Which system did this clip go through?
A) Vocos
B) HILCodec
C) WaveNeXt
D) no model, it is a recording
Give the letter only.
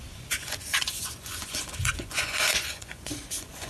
A